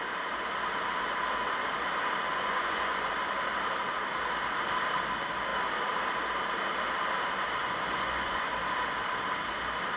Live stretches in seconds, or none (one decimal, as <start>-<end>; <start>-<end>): 0.0-2.3; 3.1-7.6; 8.5-10.0